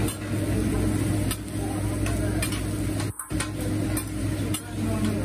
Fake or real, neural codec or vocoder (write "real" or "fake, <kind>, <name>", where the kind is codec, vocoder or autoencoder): real